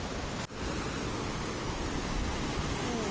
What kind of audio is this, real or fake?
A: real